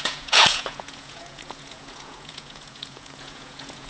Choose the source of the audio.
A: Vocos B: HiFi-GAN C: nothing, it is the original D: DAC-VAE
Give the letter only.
A